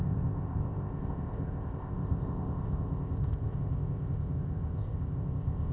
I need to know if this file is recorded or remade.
remade